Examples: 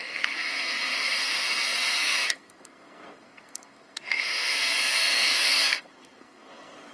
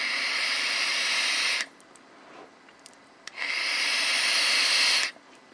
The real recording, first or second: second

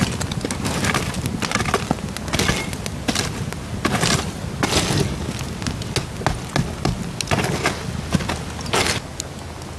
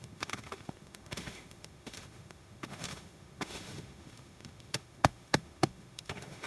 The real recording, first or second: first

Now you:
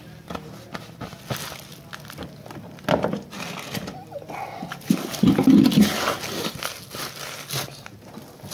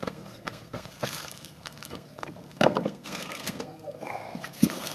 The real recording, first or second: first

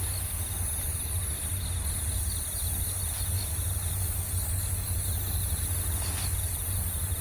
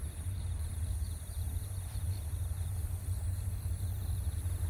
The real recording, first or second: first